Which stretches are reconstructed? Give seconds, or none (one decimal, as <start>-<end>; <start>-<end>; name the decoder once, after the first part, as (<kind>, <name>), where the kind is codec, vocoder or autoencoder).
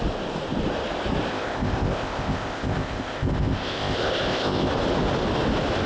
1.3-4.7 (codec, ZipCodec)